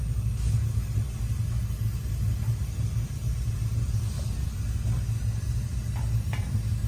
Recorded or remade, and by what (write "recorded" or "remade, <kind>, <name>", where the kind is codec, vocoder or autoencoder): recorded